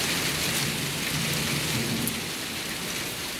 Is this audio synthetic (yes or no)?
no